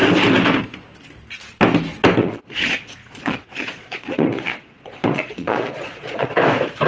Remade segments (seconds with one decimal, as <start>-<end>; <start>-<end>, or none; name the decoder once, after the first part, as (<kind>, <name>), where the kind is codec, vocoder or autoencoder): 2.2-6.3 (vocoder, Vocos)